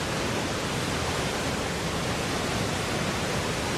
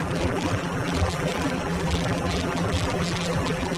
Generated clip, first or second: second